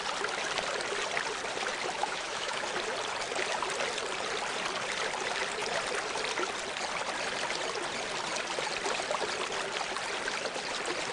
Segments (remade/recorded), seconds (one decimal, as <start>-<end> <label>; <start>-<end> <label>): 0.0-2.0 recorded; 2.0-2.6 remade; 2.6-11.1 recorded